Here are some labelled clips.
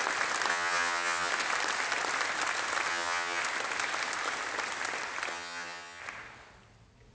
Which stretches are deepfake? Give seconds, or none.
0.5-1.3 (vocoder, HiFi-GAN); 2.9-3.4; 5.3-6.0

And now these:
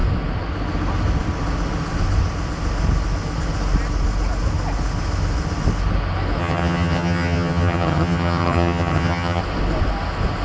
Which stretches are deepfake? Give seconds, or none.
6.4-9.4 (vocoder, HiFi-GAN)